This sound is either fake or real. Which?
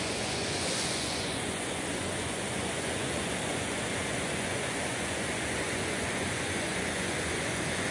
fake